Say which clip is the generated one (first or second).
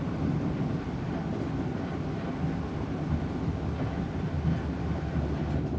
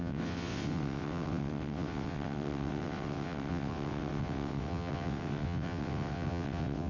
second